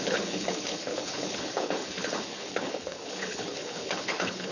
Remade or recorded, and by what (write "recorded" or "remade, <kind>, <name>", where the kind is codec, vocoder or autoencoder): remade, codec, HILCodec